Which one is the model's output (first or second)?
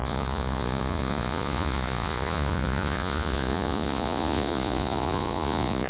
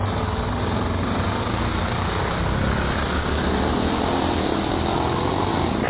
first